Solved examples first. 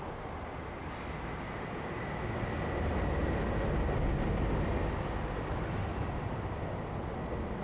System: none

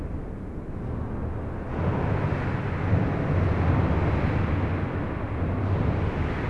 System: none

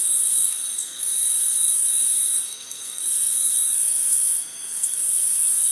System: codec, SNAC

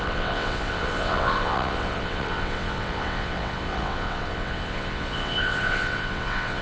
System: vocoder, WaveNeXt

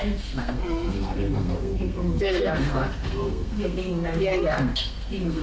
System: codec, SNAC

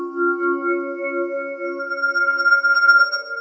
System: none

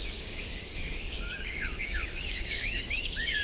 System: codec, DAC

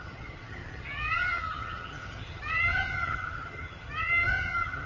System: vocoder, HiFi-GAN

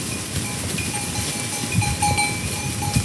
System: none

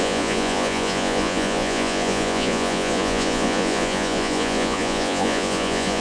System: vocoder, Vocos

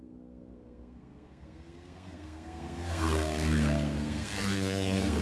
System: codec, SNAC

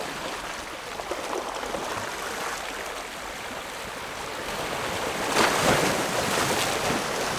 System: none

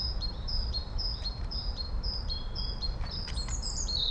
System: vocoder, BigVGAN v2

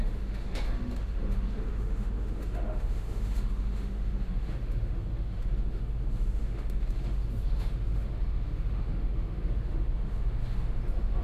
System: autoencoder, DAC-VAE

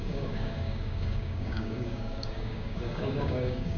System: codec, DAC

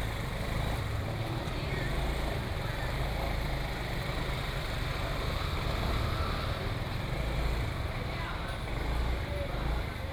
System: vocoder, BigVGAN v2